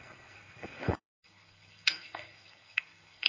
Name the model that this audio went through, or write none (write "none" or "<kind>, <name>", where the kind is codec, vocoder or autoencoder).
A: codec, SNAC